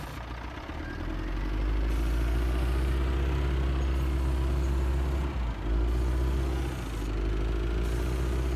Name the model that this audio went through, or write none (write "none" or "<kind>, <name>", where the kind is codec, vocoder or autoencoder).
none